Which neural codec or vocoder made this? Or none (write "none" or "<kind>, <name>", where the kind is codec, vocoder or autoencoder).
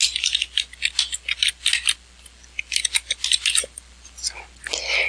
none